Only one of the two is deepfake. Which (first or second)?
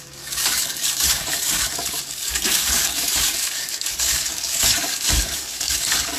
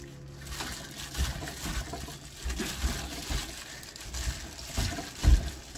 first